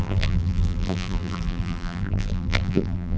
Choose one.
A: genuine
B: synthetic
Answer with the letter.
B